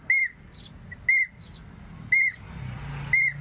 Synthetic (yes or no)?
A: no